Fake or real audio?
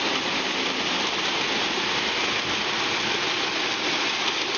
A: real